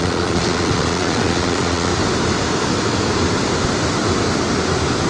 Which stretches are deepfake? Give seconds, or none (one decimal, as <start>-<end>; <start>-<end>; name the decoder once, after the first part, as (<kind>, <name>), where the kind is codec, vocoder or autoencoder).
0.0-1.9 (vocoder, Vocos)